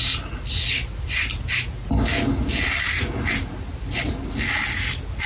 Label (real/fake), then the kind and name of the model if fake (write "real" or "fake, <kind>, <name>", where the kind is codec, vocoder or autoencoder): real